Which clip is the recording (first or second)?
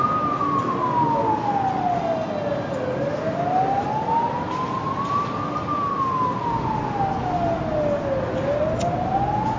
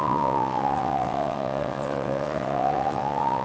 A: first